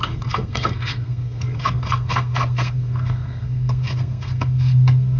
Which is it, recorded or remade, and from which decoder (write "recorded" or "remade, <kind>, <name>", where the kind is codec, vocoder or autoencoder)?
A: remade, codec, SNAC